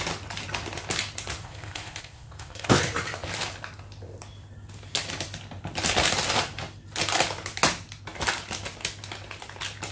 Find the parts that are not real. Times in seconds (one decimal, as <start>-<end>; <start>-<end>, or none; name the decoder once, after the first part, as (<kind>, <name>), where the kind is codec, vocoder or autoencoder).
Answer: 1.4-2.8 (codec, ZipCodec)